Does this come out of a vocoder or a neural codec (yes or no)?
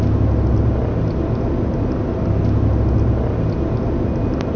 no